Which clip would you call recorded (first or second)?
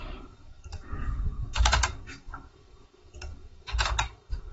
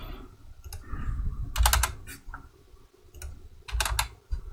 second